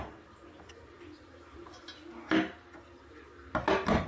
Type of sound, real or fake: real